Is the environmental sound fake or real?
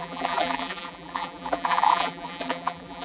fake